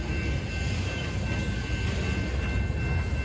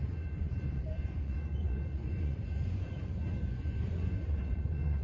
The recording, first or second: first